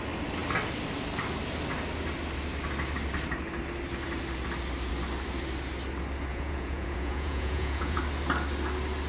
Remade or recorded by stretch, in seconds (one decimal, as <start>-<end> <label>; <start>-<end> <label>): 0.0-6.3 recorded; 6.3-8.0 remade; 8.0-9.1 recorded